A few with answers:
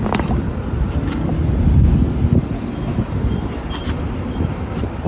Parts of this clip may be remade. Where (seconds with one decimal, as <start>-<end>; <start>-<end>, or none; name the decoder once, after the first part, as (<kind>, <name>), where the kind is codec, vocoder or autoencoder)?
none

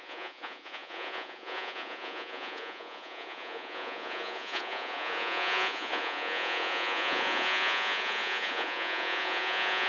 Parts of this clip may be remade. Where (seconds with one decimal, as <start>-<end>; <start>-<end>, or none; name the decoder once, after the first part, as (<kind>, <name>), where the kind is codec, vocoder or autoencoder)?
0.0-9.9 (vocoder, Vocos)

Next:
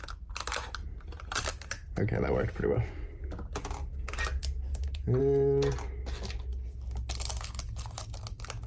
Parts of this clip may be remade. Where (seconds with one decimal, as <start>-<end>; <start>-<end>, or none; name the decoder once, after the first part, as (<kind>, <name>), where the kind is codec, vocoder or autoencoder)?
4.4-5.2 (vocoder, BigVGAN v2)

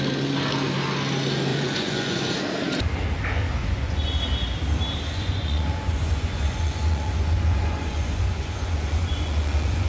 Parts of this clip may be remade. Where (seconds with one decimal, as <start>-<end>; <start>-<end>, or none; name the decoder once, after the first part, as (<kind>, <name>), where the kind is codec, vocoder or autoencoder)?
1.5-2.3 (vocoder, Vocos); 3.6-4.2; 5.1-9.9

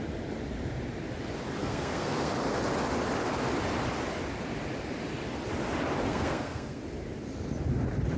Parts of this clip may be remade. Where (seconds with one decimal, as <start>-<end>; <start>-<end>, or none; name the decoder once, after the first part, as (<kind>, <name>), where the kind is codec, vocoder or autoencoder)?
1.6-2.3 (codec, SNAC); 6.1-6.8